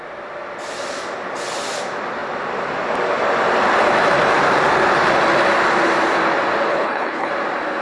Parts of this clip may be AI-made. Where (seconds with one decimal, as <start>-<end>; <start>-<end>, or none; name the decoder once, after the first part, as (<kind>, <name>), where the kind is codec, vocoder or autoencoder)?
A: 6.7-7.3 (codec, HILCodec)